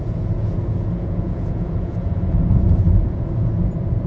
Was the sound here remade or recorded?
remade